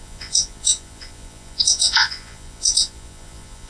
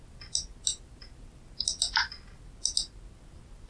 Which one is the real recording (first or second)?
second